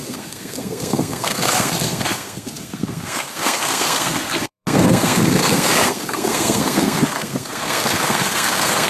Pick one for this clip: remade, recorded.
remade